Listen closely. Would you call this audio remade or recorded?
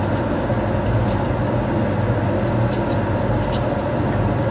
recorded